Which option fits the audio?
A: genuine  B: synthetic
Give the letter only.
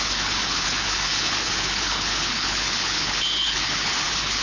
B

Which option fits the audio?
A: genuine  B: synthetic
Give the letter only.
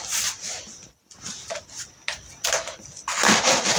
A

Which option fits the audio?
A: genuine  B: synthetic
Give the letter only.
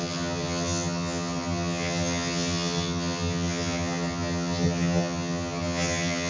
B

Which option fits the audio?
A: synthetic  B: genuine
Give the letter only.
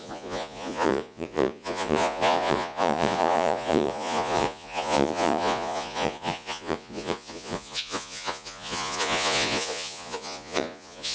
A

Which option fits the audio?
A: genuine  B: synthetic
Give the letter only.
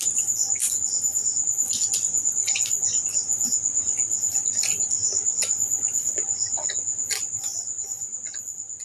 A